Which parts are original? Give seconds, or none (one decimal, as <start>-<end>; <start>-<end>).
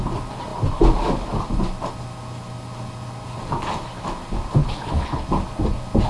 0.0-4.6; 5.2-6.1